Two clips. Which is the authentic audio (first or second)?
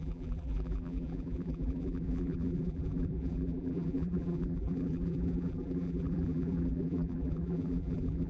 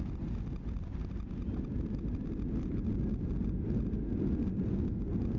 second